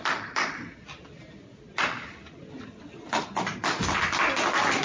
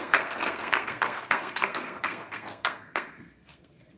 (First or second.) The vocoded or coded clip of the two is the second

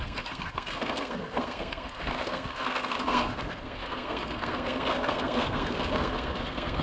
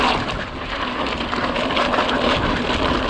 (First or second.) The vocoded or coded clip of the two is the first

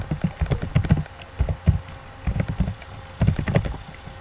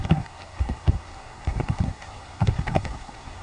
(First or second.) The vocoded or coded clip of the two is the second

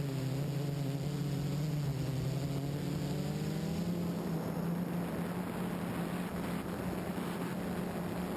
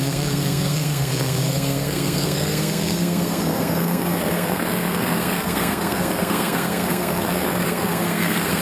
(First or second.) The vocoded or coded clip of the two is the second